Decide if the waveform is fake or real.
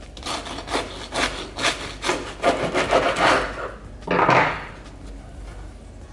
real